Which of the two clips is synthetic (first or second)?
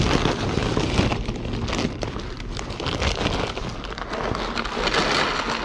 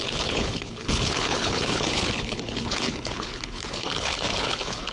second